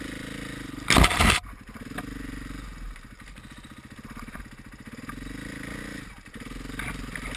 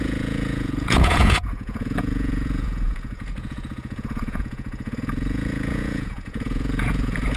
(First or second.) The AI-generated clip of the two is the second